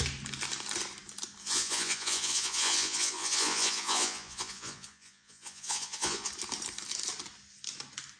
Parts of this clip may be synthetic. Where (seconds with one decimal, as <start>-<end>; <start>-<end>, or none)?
1.4-6.3